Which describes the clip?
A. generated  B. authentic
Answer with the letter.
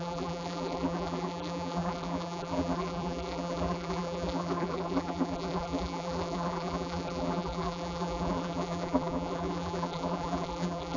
A